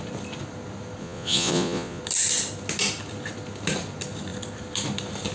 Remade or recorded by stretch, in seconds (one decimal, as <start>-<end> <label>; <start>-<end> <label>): 0.0-1.0 recorded; 1.0-2.0 remade; 2.0-5.3 recorded